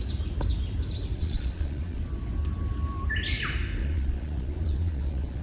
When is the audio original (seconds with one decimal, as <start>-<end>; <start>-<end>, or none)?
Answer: 0.0-1.2; 2.0-3.8